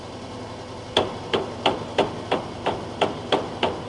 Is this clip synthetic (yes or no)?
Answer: no